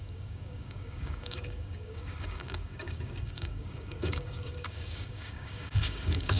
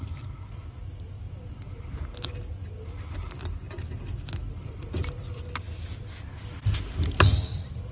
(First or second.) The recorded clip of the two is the second